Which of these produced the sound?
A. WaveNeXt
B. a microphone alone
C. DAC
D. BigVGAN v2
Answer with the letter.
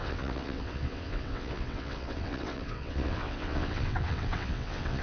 A